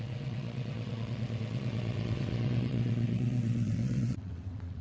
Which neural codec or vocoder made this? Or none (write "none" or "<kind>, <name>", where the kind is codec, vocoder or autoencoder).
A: vocoder, WaveNeXt